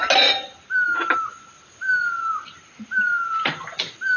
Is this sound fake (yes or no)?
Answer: no